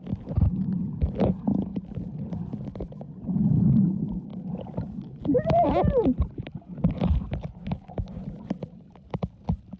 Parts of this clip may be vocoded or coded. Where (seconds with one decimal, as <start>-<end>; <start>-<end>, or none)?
none